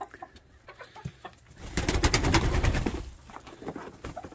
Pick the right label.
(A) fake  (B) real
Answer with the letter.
B